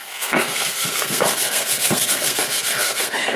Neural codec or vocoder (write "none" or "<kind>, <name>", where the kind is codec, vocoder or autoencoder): codec, SNAC